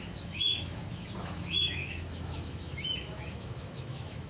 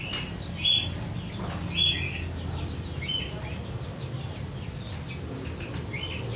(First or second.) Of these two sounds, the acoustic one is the second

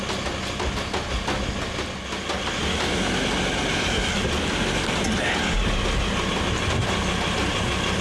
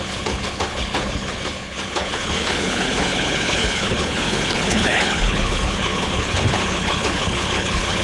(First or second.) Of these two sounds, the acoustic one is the first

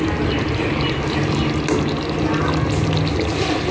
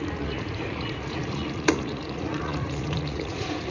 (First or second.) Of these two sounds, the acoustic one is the first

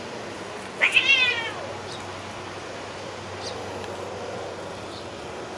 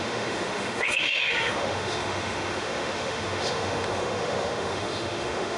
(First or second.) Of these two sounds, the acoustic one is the first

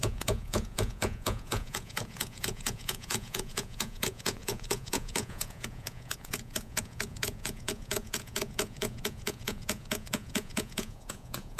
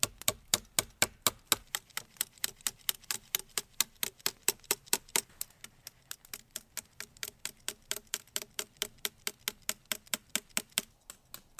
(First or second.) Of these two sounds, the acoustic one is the second